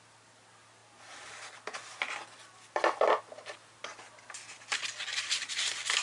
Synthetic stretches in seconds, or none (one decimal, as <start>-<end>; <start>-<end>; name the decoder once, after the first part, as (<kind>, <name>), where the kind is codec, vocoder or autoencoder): none